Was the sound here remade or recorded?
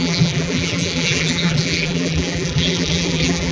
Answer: remade